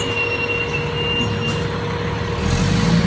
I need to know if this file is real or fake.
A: real